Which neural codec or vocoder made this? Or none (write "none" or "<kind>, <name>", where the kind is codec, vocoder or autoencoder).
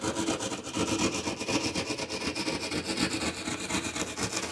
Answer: none